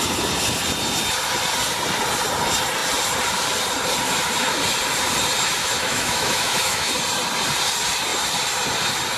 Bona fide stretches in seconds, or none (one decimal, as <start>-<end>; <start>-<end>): 0.0-5.6; 6.9-9.2